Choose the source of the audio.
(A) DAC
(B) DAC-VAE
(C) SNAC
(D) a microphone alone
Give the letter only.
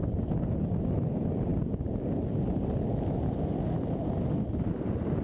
D